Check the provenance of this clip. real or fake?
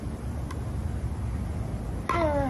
real